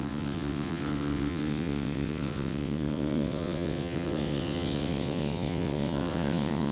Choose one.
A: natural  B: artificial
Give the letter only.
B